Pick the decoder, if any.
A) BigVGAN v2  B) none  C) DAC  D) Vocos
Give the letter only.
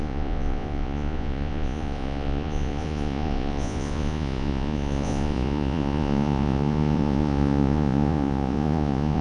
D